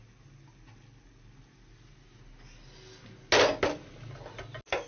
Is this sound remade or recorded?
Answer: recorded